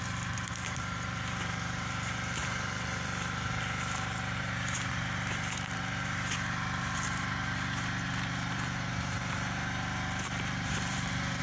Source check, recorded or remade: remade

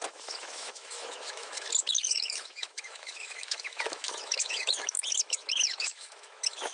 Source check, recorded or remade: remade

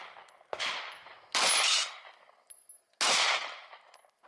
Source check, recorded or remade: recorded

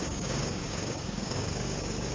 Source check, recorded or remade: remade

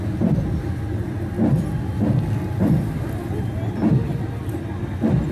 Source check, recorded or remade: recorded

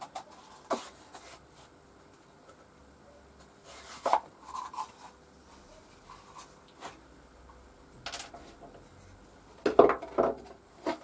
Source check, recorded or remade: recorded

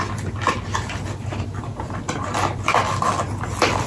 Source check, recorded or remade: recorded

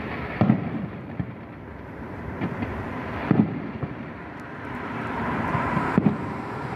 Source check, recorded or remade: remade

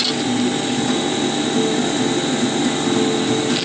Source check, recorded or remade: recorded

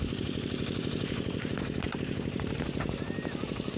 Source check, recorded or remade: remade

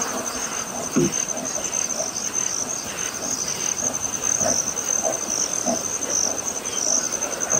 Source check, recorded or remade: recorded